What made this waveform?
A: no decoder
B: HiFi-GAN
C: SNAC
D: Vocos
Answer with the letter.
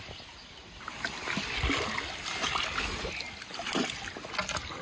A